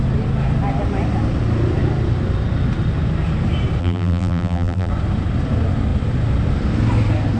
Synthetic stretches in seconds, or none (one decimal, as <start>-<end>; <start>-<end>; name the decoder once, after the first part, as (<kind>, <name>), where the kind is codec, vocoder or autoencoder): 3.8-4.9 (vocoder, BigVGAN v2)